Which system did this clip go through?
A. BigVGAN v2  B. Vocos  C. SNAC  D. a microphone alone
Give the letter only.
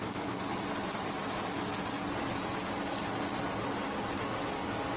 D